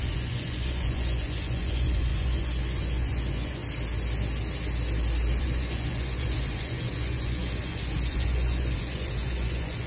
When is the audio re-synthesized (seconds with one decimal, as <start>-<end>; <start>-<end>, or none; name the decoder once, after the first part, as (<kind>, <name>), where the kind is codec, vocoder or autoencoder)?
0.0-3.6 (vocoder, Vocos); 5.4-9.9